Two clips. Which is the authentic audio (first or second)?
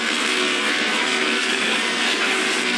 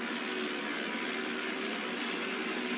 second